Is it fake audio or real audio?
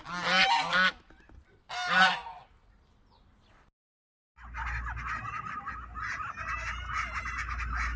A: real